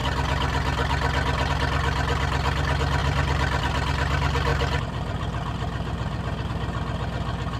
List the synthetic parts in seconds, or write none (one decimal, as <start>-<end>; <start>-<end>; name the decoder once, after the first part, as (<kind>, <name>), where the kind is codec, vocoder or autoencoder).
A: 3.0-3.6 (vocoder, BigVGAN v2); 4.5-6.5